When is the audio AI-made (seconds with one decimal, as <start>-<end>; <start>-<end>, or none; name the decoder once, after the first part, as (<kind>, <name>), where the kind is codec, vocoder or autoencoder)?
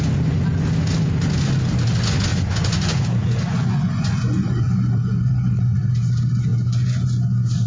2.3-5.9 (vocoder, Vocos); 6.5-7.7